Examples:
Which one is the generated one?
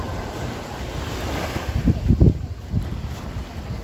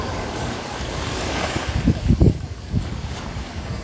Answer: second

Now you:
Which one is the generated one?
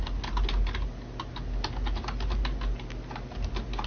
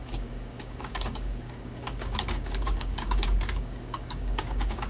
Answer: second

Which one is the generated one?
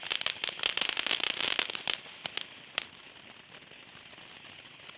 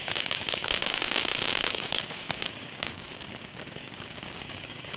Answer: second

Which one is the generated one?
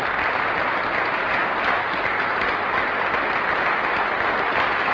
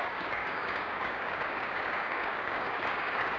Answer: second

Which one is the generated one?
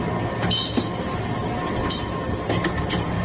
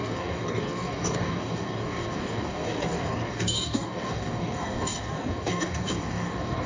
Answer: second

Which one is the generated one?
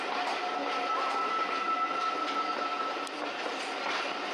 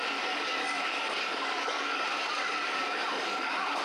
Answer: second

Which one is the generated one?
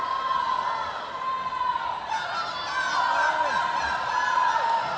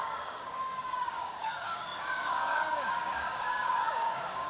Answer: second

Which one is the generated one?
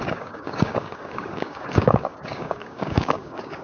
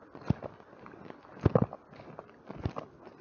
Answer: first